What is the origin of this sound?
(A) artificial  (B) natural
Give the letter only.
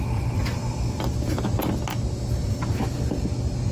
B